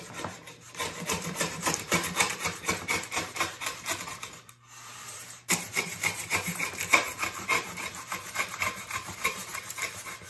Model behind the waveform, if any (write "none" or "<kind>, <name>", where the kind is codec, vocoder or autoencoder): vocoder, BigVGAN v2